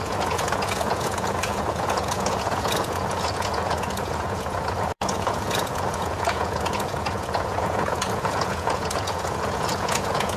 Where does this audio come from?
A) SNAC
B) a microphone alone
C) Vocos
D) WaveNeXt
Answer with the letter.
C